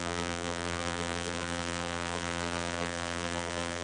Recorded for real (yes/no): no